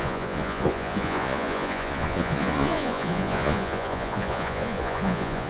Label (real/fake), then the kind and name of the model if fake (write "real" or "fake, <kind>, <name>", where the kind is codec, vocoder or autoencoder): fake, vocoder, Vocos